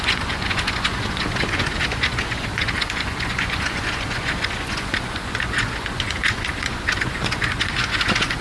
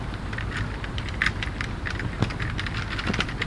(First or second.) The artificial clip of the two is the first